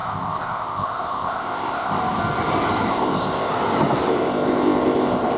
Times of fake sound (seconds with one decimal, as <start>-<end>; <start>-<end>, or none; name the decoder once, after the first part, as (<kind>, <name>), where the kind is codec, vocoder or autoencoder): 0.0-2.0 (codec, ZipCodec); 2.9-3.5; 4.1-5.4